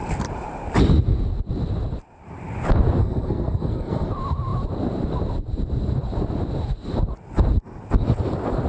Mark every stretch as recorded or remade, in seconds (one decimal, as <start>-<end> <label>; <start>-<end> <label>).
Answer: 0.0-3.0 recorded; 3.0-4.1 remade; 4.1-8.7 recorded